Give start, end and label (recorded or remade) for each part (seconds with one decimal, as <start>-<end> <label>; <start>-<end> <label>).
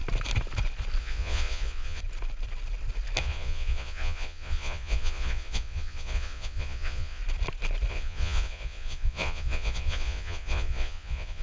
0.0-1.0 recorded; 1.0-2.0 remade; 2.0-3.2 recorded; 3.2-7.2 remade; 7.2-7.9 recorded; 7.9-11.4 remade